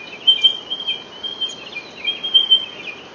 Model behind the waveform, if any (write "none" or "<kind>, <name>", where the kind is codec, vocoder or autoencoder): none